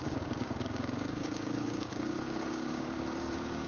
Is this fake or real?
fake